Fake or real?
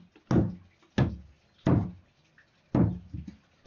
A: real